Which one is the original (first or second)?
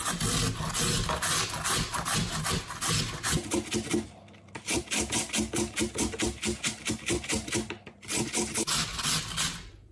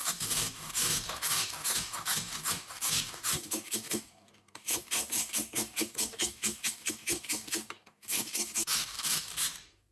first